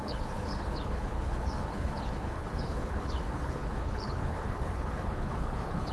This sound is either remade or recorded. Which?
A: remade